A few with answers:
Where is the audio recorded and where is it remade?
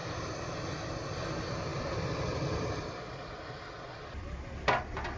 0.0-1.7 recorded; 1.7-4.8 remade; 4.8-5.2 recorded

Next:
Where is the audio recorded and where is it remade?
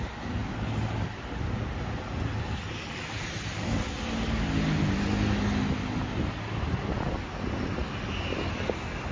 0.0-9.1 recorded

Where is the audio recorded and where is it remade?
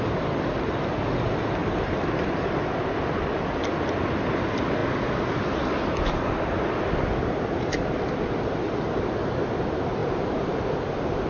0.0-1.6 recorded; 1.6-2.1 remade; 2.1-10.0 recorded; 10.0-10.7 remade; 10.7-11.3 recorded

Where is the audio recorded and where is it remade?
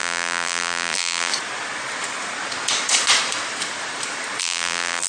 0.0-1.3 remade; 1.3-4.4 recorded; 4.4-5.1 remade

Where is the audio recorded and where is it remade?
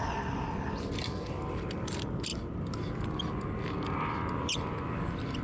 0.0-5.4 recorded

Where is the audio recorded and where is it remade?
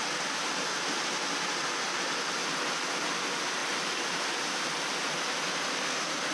0.0-2.4 recorded; 2.4-3.0 remade; 3.0-3.6 recorded; 3.6-4.5 remade; 4.5-6.3 recorded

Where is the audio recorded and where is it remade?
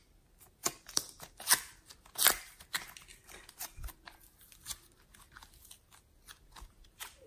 0.0-0.6 recorded; 0.6-1.2 remade; 1.2-3.1 recorded; 3.1-3.9 remade; 3.9-7.3 recorded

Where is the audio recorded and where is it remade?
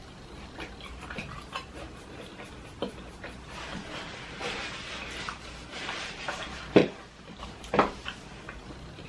0.0-2.3 remade; 2.3-5.2 recorded; 5.2-6.8 remade; 6.8-7.4 recorded; 7.4-9.1 remade